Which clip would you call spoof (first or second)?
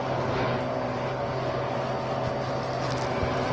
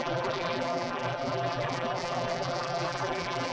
second